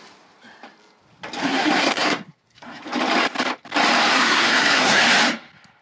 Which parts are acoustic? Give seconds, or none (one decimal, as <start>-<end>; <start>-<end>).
0.0-1.4; 2.8-4.1; 5.0-5.8